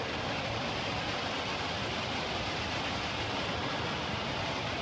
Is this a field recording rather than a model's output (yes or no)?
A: yes